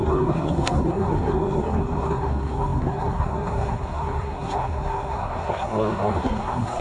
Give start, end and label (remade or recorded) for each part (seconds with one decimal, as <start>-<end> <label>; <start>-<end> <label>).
0.0-6.8 remade